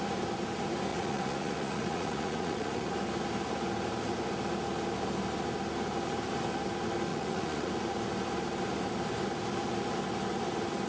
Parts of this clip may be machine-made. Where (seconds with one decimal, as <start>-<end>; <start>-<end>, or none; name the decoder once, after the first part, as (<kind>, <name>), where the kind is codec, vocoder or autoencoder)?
0.9-2.9 (vocoder, Vocos); 7.1-7.7